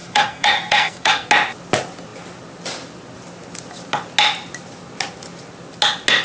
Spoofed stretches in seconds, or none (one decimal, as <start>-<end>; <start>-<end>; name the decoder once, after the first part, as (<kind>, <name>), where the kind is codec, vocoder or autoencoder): 0.0-1.3 (codec, SNAC)